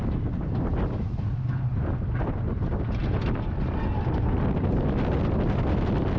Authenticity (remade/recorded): recorded